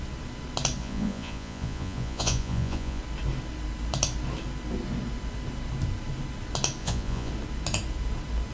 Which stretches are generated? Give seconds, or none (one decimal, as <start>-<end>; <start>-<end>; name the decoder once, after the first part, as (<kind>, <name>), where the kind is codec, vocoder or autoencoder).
0.8-3.0 (vocoder, Vocos); 6.8-7.3